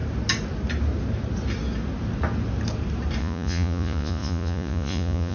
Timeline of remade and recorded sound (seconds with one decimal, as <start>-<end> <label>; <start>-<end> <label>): 0.0-3.2 recorded; 3.2-5.3 remade